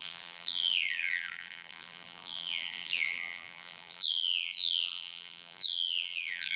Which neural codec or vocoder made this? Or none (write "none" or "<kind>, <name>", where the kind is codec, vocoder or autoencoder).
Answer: vocoder, BigVGAN v2